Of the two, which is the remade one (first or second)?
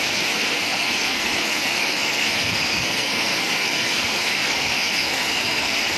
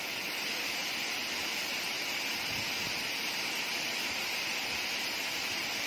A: first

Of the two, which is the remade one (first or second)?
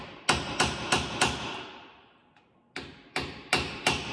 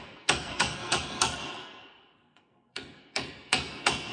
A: second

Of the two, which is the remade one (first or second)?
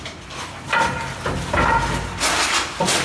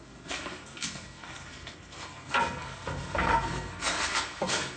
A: second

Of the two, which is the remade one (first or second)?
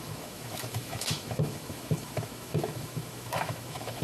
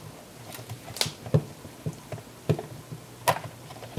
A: first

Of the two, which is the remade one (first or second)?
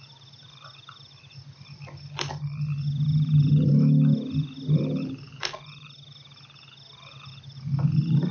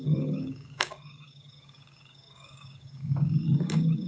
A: second